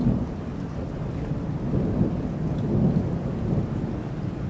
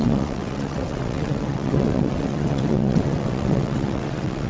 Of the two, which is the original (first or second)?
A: first